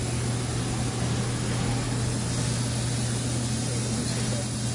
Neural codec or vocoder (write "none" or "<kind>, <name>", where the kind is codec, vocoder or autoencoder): none